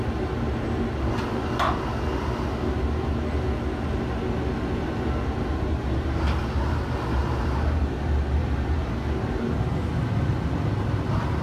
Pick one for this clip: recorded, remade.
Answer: recorded